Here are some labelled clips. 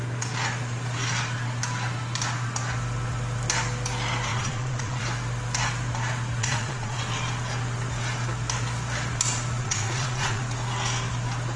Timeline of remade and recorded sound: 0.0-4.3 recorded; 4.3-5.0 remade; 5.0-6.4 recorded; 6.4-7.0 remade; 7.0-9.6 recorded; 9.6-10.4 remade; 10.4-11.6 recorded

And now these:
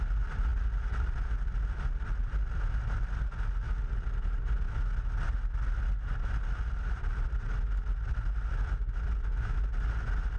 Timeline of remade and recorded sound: 0.0-10.4 recorded

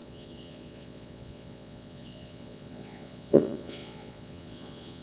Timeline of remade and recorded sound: 0.0-5.0 remade

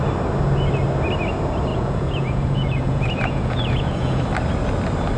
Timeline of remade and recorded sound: 0.0-1.7 recorded; 1.7-4.2 remade; 4.2-5.2 recorded

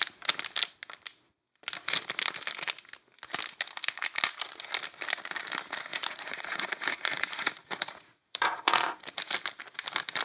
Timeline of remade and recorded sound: 0.0-5.9 recorded; 5.9-8.9 remade; 8.9-10.2 recorded

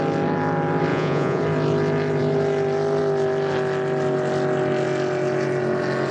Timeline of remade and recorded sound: 0.0-0.9 recorded; 0.9-1.4 remade; 1.4-6.1 recorded